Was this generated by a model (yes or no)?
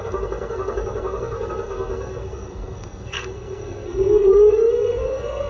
yes